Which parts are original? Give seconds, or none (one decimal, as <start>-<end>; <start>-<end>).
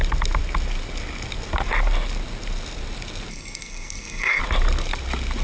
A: 0.0-3.3; 4.4-5.4